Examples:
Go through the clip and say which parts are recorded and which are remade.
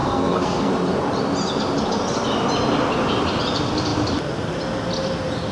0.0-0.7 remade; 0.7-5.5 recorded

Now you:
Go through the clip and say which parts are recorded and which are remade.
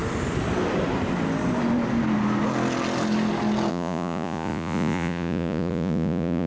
0.0-3.7 recorded; 3.7-6.5 remade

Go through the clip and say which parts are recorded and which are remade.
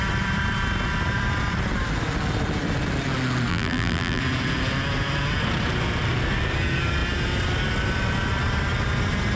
0.0-3.5 recorded; 3.5-4.2 remade; 4.2-9.4 recorded